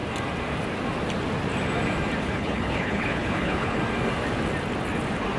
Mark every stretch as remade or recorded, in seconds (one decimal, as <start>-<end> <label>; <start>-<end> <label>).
0.0-2.2 recorded; 2.2-3.8 remade; 3.8-5.4 recorded